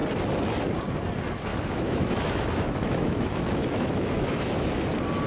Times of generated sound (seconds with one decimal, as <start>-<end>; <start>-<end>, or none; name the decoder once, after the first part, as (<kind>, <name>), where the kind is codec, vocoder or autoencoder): 1.5-4.7 (autoencoder, DAC-VAE)